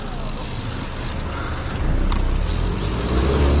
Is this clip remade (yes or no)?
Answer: no